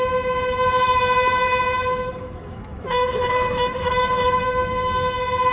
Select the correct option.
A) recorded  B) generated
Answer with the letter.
B